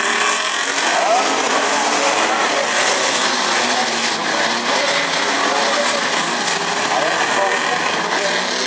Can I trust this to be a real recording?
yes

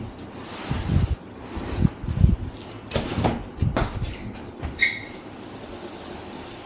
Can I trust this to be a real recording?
yes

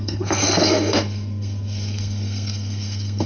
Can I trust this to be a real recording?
no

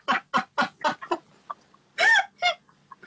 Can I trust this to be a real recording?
yes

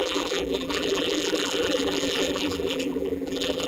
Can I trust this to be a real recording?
no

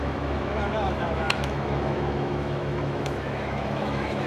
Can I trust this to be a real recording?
no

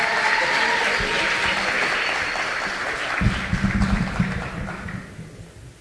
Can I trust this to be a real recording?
yes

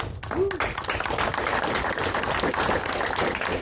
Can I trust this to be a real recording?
yes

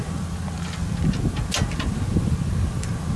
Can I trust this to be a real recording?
yes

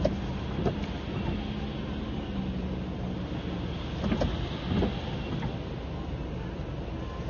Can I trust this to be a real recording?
yes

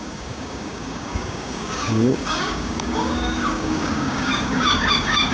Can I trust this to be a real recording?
no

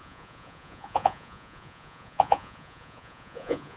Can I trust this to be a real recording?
no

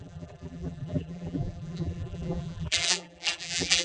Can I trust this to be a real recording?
no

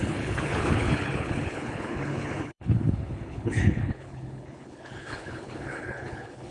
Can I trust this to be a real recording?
no